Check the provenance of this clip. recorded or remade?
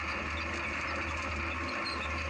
recorded